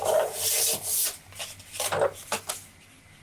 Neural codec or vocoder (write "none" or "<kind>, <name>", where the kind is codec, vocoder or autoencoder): none